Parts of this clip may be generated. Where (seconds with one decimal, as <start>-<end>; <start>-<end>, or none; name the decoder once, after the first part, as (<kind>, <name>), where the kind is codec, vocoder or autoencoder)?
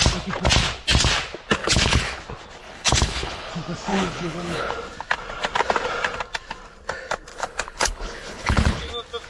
1.6-2.2 (codec, HILCodec); 2.6-3.5; 3.9-4.7; 7.3-8.9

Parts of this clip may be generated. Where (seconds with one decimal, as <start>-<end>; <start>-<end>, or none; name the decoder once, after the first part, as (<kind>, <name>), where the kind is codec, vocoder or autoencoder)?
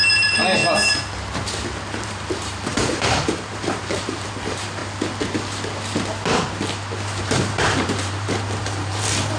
0.0-0.6 (vocoder, BigVGAN v2); 2.0-4.8; 7.2-9.4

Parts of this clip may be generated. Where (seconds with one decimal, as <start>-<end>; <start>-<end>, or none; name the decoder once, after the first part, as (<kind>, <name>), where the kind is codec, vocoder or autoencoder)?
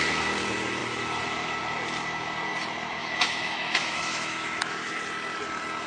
3.0-4.9 (autoencoder, DAC-VAE)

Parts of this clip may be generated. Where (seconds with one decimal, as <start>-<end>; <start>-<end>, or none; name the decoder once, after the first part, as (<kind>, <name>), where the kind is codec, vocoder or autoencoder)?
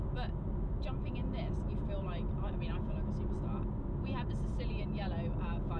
none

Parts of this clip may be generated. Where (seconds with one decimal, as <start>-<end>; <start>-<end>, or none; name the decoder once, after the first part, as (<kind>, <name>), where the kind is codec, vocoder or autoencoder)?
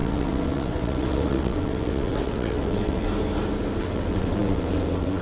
0.0-3.1 (vocoder, WaveNeXt); 3.8-5.2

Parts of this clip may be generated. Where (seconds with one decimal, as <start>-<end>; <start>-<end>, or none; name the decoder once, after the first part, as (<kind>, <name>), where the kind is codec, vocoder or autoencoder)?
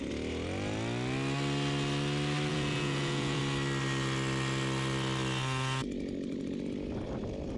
2.5-3.4 (vocoder, Vocos)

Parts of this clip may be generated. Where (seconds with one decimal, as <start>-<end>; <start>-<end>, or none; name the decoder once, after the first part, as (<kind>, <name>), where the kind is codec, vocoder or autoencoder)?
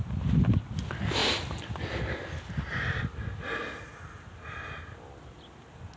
none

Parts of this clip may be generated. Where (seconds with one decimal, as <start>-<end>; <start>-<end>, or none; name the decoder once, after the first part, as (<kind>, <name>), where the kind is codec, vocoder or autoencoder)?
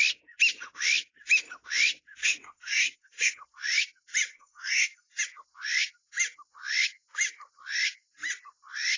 2.2-3.3 (codec, SNAC); 4.3-5.2